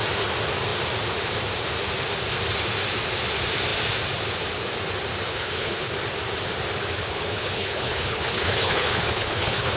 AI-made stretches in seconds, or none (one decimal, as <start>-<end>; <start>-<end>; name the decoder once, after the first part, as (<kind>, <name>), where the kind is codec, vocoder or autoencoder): 5.3-5.9 (codec, HILCodec); 7.0-9.8